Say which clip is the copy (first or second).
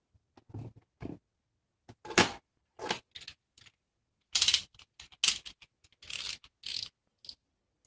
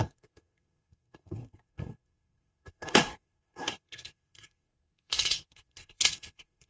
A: second